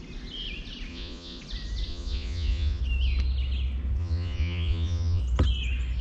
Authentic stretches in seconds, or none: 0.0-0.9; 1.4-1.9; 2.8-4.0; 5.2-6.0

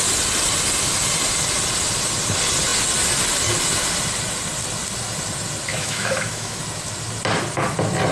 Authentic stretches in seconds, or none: 0.0-5.7; 6.6-8.1

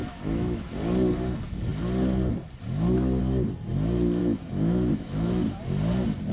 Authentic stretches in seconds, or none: 0.7-4.2; 5.4-6.3